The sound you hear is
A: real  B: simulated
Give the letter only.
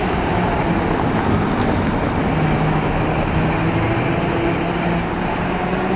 A